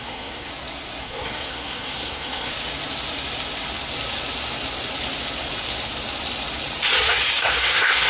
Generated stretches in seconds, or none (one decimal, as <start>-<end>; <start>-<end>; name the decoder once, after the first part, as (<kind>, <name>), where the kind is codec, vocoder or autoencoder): 0.0-0.5 (codec, SNAC); 1.0-2.5; 7.4-8.1